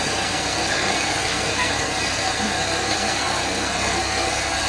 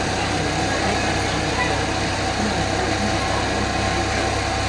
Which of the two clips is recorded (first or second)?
second